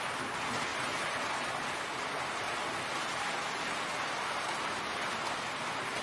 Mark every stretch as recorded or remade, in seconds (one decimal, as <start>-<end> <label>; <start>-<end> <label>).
0.0-4.9 recorded; 4.9-5.6 remade; 5.6-6.0 recorded